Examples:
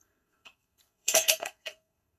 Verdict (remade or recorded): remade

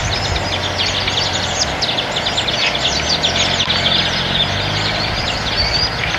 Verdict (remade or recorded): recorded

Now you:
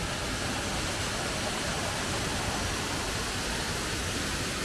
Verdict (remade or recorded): recorded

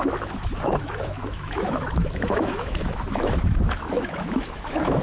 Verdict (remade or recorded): remade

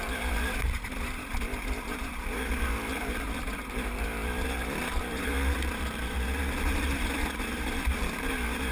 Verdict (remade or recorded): remade